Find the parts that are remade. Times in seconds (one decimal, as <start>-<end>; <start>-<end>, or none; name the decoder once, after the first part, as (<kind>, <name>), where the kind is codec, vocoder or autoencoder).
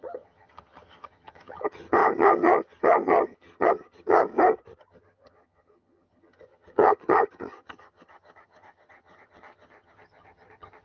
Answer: 0.0-4.3 (vocoder, HiFi-GAN); 4.8-10.8